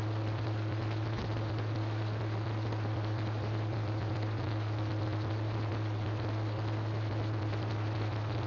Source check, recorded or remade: recorded